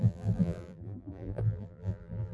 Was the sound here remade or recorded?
remade